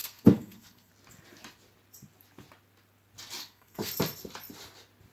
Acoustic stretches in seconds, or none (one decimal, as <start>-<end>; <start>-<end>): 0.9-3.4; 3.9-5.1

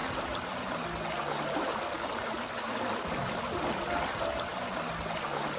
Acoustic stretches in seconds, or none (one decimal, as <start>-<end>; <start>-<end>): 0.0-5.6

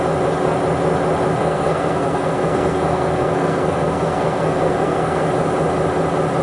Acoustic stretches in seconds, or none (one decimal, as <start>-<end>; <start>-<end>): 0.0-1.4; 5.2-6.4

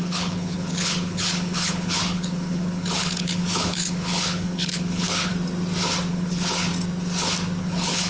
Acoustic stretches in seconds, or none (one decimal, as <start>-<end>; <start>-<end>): 5.3-6.1; 6.7-7.6

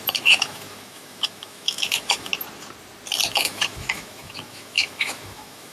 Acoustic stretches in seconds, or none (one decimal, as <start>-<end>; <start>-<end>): 2.3-3.3

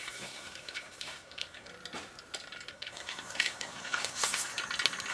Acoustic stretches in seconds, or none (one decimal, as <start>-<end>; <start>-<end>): 1.7-2.7; 4.5-5.1